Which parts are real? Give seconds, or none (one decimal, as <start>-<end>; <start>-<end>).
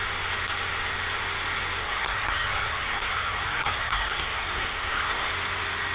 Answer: 0.0-1.8; 5.3-5.9